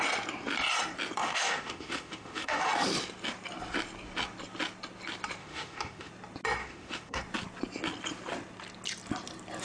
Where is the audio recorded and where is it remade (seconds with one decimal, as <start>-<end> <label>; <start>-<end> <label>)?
0.0-1.2 recorded; 1.2-2.7 remade; 2.7-5.4 recorded; 5.4-6.1 remade; 6.1-6.6 recorded; 6.6-7.2 remade; 7.2-9.6 recorded